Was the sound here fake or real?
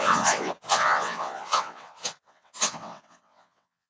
fake